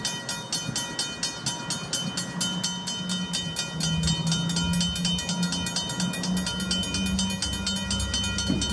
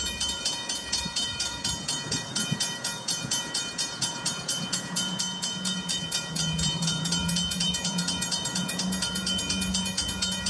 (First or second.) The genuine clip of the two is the first